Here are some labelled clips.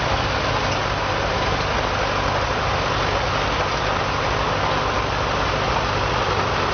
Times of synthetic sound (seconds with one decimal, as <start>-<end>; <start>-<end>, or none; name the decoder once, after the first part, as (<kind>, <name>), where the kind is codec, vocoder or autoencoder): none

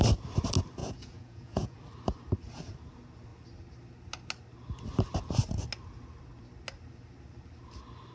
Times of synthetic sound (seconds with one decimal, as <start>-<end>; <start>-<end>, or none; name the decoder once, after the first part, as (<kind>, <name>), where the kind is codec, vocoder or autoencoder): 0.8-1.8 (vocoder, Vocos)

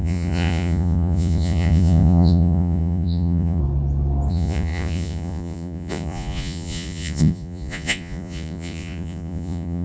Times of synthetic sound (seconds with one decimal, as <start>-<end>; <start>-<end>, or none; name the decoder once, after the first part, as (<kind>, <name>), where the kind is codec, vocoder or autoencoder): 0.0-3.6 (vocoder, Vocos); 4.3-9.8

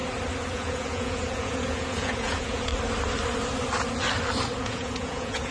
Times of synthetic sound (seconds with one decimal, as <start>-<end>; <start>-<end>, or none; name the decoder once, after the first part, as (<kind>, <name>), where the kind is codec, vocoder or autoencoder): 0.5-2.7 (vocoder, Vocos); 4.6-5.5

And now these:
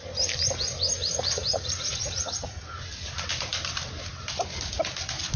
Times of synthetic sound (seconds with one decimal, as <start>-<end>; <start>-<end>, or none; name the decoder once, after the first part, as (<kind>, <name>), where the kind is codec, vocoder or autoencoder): 1.1-2.6 (vocoder, Vocos)

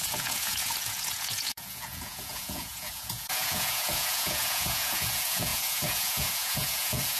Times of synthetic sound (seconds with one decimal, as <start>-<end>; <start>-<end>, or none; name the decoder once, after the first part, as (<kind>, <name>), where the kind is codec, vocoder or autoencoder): 0.0-7.2 (vocoder, Vocos)